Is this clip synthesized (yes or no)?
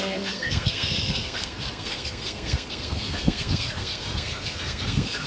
yes